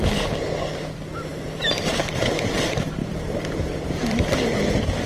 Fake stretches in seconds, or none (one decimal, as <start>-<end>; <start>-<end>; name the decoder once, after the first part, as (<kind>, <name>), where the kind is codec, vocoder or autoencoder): 1.3-2.0 (vocoder, BigVGAN v2); 3.0-4.2